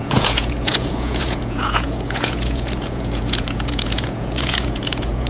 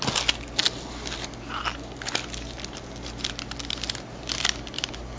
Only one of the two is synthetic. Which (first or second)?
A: first